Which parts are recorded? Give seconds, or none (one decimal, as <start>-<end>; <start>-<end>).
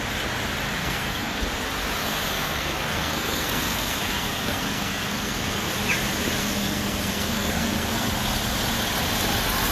0.0-0.8; 1.4-2.0; 5.7-6.4; 8.1-9.7